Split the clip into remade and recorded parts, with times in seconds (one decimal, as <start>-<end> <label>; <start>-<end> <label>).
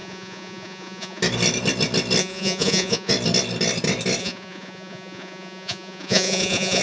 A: 0.0-1.2 remade; 1.2-2.2 recorded; 2.2-3.1 remade; 3.1-4.2 recorded; 4.2-6.8 remade